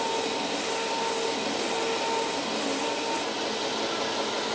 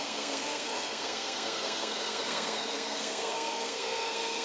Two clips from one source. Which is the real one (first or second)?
first